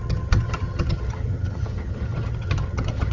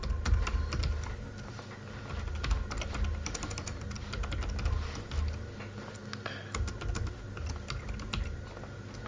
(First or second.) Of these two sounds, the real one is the second